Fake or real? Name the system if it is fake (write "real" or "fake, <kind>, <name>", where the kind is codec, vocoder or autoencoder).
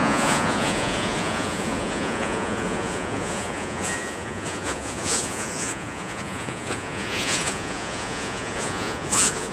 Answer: fake, vocoder, Vocos